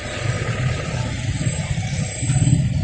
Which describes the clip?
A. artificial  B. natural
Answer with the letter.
A